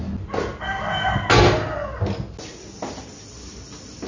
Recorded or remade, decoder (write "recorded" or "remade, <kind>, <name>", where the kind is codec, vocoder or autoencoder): recorded